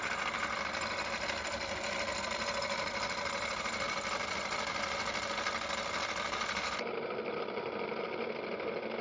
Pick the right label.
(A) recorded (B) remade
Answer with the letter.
A